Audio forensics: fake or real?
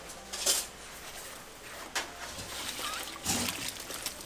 real